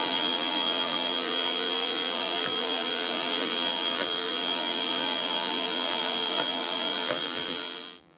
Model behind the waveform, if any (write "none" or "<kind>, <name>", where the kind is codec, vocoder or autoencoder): vocoder, BigVGAN v2